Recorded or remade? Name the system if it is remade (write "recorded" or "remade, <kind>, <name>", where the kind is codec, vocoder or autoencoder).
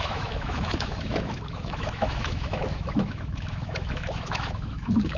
remade, autoencoder, DAC-VAE